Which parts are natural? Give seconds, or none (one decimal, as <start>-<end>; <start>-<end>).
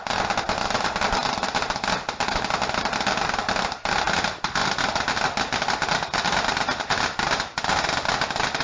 0.0-8.6